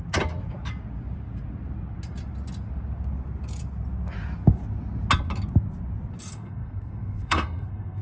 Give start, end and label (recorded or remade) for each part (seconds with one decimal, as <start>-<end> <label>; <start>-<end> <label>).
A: 0.0-6.3 recorded; 6.3-8.0 remade